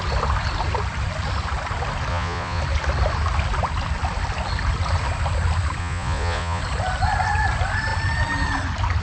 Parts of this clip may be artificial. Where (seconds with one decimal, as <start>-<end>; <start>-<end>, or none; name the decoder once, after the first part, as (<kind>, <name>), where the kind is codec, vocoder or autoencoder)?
2.1-2.6 (vocoder, Vocos); 5.8-6.6

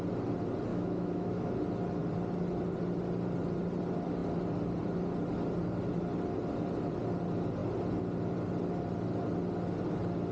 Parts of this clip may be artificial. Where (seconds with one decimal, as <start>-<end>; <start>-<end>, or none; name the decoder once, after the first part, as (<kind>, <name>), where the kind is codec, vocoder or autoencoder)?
0.7-1.5 (autoencoder, DAC-VAE)

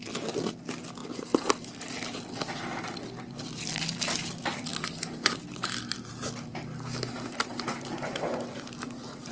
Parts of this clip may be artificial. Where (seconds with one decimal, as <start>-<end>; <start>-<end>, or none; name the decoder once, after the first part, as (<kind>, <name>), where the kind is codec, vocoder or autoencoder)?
none

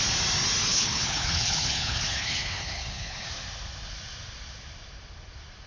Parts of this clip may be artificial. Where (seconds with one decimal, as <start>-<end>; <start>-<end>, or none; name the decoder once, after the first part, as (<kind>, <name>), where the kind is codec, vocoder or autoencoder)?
0.7-3.3 (codec, HILCodec)

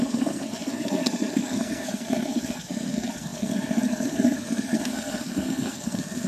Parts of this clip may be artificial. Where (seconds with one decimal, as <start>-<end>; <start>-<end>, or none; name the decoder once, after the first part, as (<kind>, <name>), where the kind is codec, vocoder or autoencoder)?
0.0-6.3 (codec, SNAC)

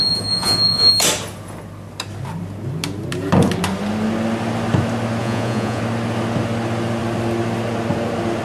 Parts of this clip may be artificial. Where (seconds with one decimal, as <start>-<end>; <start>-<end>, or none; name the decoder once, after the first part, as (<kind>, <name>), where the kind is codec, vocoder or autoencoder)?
0.0-0.9 (vocoder, Vocos); 5.2-5.8